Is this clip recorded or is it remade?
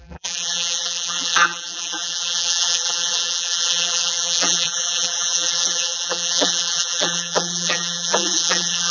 remade